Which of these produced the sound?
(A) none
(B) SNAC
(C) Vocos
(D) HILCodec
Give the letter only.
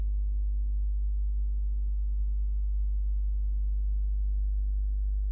D